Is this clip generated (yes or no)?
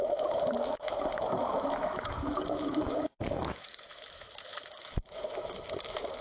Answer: yes